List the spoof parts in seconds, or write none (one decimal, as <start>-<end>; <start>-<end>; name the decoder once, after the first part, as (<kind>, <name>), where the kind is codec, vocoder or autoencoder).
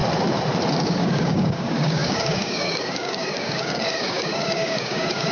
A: 0.7-5.3 (codec, DAC)